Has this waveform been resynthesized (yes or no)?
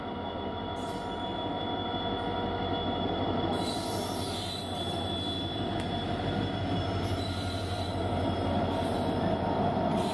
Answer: no